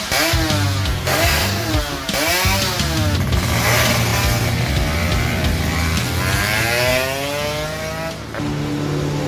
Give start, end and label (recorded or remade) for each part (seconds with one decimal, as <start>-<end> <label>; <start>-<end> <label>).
0.0-1.0 recorded; 1.0-1.7 remade; 1.7-9.3 recorded

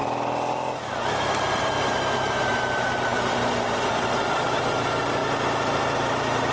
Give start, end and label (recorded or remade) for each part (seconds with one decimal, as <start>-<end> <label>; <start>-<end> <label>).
0.0-6.5 recorded

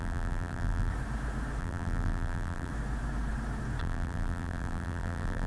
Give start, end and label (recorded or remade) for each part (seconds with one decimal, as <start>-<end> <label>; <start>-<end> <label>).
0.0-0.9 remade; 0.9-1.6 recorded; 1.6-2.7 remade; 2.7-3.8 recorded; 3.8-5.5 remade

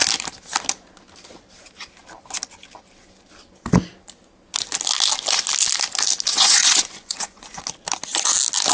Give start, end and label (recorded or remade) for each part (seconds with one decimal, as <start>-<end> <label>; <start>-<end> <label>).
0.0-6.3 recorded; 6.3-7.6 remade; 7.6-8.7 recorded

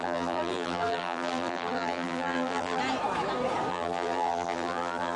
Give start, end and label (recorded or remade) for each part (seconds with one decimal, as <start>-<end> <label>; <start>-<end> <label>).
0.0-2.8 remade; 2.8-3.7 recorded; 3.7-5.2 remade

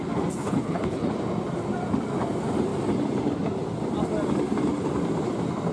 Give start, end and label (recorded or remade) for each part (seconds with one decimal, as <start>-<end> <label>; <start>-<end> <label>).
0.0-0.4 recorded; 0.4-1.1 remade; 1.1-5.7 recorded

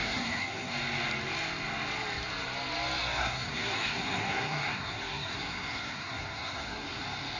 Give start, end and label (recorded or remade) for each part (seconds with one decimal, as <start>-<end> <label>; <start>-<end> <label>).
0.0-0.7 remade; 0.7-3.2 recorded; 3.2-7.0 remade; 7.0-7.4 recorded

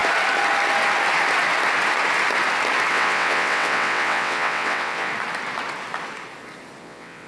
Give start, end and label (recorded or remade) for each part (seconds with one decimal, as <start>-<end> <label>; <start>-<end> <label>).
0.0-2.9 recorded; 2.9-5.1 remade; 5.1-6.8 recorded; 6.8-7.3 remade